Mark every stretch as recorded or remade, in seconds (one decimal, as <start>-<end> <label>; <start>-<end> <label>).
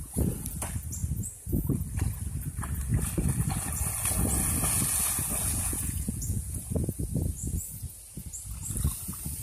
0.0-5.4 recorded; 5.4-6.7 remade; 6.7-9.4 recorded